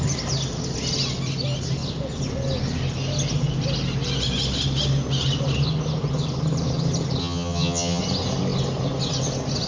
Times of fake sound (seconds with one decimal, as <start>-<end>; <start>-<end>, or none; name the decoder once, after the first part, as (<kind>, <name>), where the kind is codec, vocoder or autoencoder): 7.2-8.0 (vocoder, HiFi-GAN)